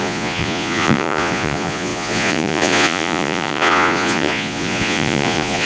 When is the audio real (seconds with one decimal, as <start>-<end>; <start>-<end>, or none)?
none